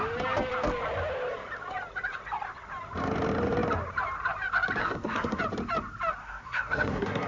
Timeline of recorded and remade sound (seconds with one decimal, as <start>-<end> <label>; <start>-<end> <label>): 0.0-4.8 recorded; 4.8-5.4 remade; 5.4-6.2 recorded; 6.2-7.3 remade